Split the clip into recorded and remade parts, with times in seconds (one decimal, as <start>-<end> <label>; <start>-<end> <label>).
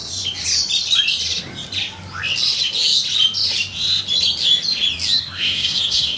0.0-5.2 recorded; 5.2-6.2 remade